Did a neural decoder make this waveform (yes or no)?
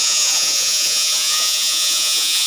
yes